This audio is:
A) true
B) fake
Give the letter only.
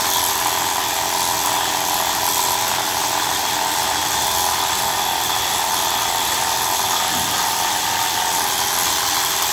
A